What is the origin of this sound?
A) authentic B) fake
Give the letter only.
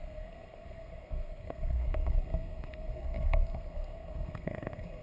B